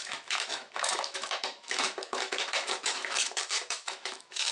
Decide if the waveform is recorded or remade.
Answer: remade